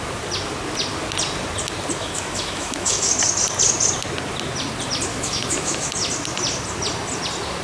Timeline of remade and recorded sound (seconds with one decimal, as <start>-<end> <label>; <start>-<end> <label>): 0.0-2.0 recorded; 2.0-3.1 remade; 3.1-5.1 recorded; 5.1-5.9 remade; 5.9-7.6 recorded